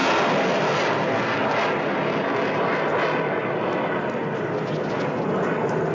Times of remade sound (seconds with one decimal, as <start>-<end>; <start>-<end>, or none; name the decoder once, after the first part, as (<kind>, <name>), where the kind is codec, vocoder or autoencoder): none